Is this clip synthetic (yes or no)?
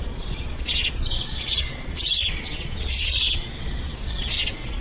yes